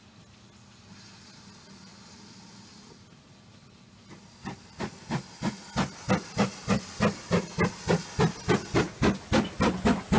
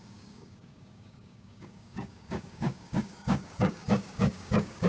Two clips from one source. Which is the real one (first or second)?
first